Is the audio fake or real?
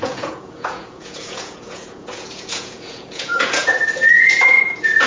fake